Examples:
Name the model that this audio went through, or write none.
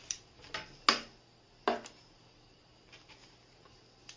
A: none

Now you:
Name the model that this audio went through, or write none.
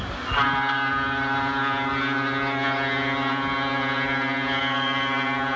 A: none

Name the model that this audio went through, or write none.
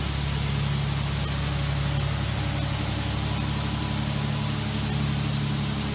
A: none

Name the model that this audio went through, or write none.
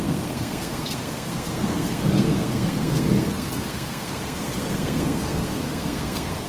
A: codec, SNAC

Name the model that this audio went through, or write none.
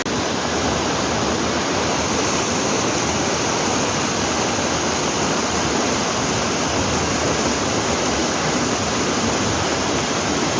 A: none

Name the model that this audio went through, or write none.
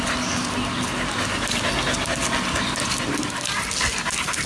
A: none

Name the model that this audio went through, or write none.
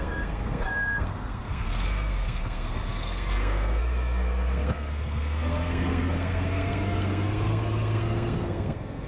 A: codec, SNAC